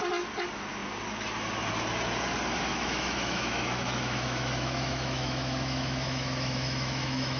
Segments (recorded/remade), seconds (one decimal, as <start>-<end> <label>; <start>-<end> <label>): 0.0-2.7 recorded; 2.7-7.4 remade